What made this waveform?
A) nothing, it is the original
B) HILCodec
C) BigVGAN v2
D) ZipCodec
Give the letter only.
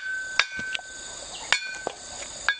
A